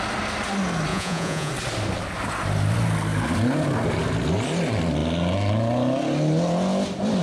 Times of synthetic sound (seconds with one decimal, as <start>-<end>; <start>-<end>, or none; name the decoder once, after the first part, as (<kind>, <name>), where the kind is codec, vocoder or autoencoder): 0.9-1.5 (vocoder, Vocos)